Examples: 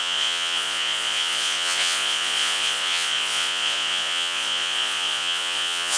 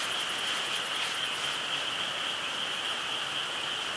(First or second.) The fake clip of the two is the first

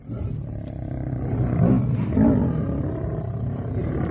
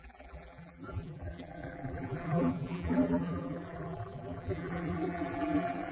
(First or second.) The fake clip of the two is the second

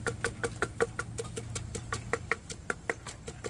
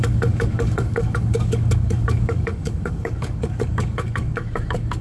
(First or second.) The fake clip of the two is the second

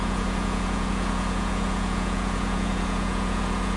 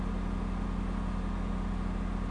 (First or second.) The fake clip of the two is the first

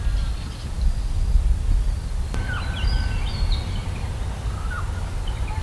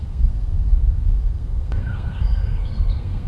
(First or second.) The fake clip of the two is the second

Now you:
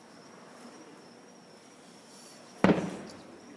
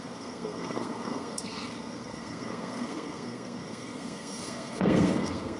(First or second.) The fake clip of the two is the second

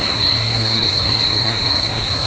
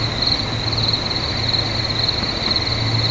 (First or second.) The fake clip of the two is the first